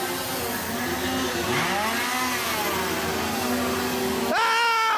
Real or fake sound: real